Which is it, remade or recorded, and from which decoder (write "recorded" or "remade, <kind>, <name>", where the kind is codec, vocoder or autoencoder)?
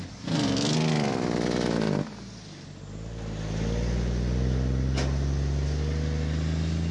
recorded